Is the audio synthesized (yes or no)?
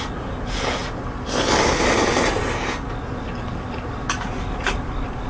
no